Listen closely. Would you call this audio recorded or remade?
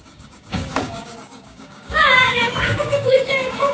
remade